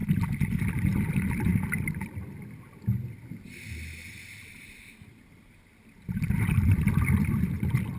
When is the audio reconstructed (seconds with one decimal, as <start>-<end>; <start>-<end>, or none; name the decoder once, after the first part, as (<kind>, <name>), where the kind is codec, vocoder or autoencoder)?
none